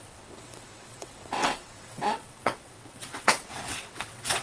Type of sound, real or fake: fake